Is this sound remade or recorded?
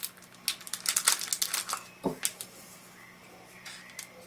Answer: recorded